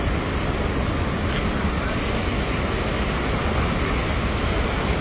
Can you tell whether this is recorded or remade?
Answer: recorded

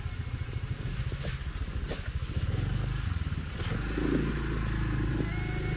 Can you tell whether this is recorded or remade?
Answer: recorded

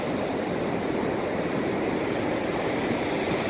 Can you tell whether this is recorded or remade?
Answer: recorded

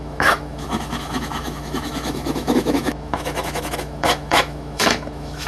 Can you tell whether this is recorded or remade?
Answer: remade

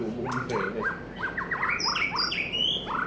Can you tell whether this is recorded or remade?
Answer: recorded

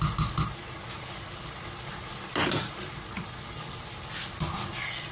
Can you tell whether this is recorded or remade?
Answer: recorded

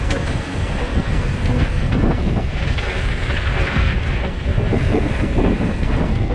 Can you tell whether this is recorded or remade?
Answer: remade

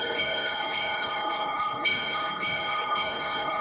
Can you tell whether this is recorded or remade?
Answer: remade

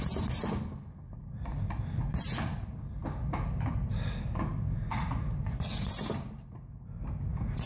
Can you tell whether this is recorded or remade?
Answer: recorded